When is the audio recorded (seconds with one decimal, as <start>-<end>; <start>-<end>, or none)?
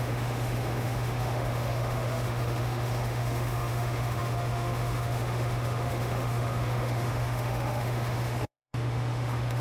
none